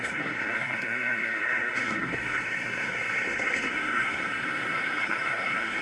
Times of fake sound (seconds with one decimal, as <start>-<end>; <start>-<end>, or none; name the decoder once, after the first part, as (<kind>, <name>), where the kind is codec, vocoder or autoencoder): 0.0-5.8 (codec, SNAC)